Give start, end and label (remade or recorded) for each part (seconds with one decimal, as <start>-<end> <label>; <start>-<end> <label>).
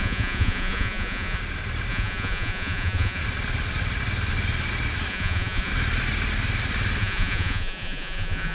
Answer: 0.0-1.4 remade; 1.4-1.9 recorded; 1.9-3.2 remade; 3.2-5.1 recorded; 5.1-5.7 remade; 5.7-7.0 recorded; 7.0-8.5 remade